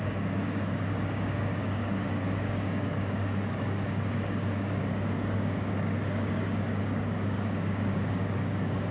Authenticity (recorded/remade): remade